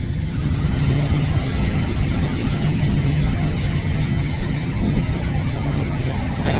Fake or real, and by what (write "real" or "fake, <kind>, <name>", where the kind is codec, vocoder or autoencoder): fake, vocoder, HiFi-GAN